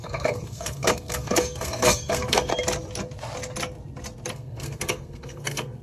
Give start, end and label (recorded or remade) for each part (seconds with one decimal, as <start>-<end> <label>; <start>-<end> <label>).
0.0-2.5 remade; 2.5-4.3 recorded; 4.3-5.8 remade